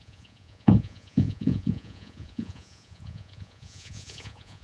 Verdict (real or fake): fake